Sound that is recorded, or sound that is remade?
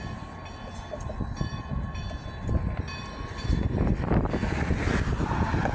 recorded